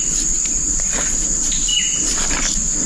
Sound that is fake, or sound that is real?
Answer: real